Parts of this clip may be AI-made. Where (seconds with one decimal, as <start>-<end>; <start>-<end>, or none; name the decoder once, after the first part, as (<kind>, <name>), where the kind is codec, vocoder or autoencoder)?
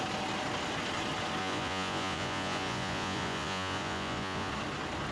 1.4-4.5 (vocoder, Vocos)